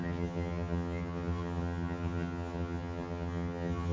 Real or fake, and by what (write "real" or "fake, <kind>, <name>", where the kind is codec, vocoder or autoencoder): fake, vocoder, HiFi-GAN